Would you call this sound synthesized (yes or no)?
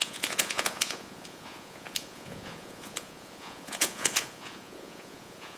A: yes